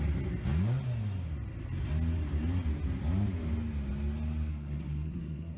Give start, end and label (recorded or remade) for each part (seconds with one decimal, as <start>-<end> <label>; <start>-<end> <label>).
0.0-4.5 recorded; 4.5-5.6 remade